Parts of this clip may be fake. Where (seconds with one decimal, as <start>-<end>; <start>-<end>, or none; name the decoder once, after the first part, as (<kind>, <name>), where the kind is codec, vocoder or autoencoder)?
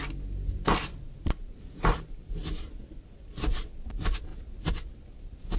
none